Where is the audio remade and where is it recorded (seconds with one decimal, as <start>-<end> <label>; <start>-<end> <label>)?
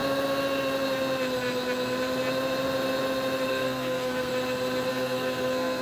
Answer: 0.0-3.5 recorded; 3.5-4.3 remade; 4.3-4.9 recorded; 4.9-5.8 remade